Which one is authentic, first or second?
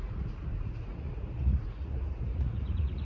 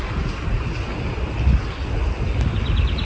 second